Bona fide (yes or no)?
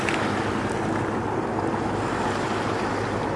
yes